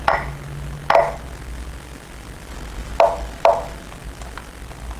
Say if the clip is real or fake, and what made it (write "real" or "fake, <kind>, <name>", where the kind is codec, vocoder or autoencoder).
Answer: real